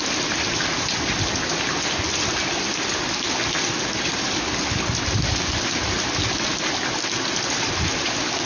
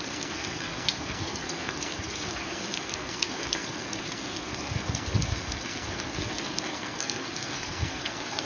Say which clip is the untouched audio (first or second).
first